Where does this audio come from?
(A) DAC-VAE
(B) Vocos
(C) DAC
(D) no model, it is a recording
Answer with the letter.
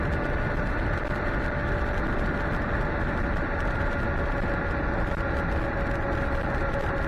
D